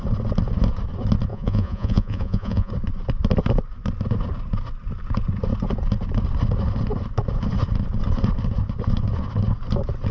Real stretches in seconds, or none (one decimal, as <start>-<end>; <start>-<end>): 0.0-1.3; 2.7-10.1